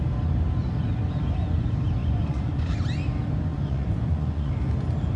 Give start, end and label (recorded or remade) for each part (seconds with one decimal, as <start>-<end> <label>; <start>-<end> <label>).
0.0-2.0 recorded; 2.0-2.7 remade; 2.7-3.5 recorded; 3.5-4.5 remade; 4.5-5.2 recorded